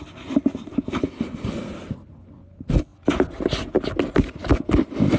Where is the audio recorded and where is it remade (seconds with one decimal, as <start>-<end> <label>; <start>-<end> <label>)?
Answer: 0.0-5.2 recorded